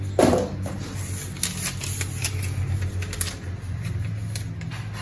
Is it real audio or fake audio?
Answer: real